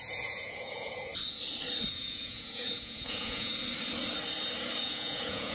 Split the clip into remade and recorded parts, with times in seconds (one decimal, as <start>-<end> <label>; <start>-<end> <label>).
0.0-1.1 remade; 1.1-1.9 recorded; 1.9-3.5 remade; 3.5-4.8 recorded; 4.8-5.5 remade

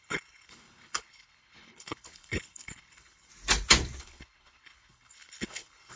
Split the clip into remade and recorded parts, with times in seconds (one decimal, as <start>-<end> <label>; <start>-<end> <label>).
0.0-3.3 remade; 3.3-4.0 recorded; 4.0-6.0 remade

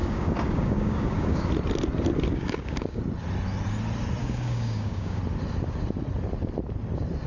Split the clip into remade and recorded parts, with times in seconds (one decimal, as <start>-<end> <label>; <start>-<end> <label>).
0.0-1.5 remade; 1.5-2.3 recorded; 2.3-3.0 remade; 3.0-4.2 recorded; 4.2-5.2 remade; 5.2-7.3 recorded

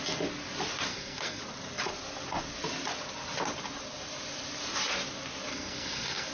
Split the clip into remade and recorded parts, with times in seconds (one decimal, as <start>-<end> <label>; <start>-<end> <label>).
0.0-0.9 recorded; 0.9-1.4 remade; 1.4-5.5 recorded; 5.5-6.3 remade